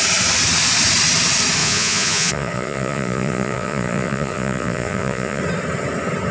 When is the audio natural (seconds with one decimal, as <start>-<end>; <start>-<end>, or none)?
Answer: 0.0-1.6; 5.4-6.3